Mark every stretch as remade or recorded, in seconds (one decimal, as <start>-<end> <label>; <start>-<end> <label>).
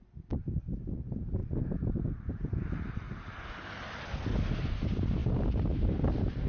0.0-5.2 recorded; 5.2-5.8 remade; 5.8-6.5 recorded